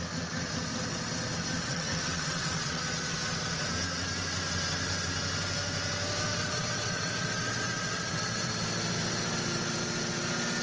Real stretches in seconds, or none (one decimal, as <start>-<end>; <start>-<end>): 0.0-1.7; 2.8-6.3; 8.5-10.6